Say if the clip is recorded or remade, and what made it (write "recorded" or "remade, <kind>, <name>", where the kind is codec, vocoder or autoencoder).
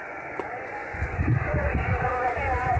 remade, vocoder, Vocos